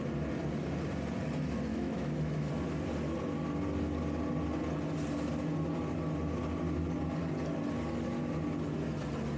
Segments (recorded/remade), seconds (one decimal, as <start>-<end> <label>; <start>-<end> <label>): 0.0-1.7 recorded; 1.7-2.5 remade; 2.5-9.4 recorded